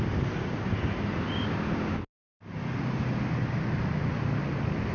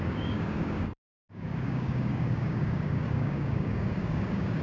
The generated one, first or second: second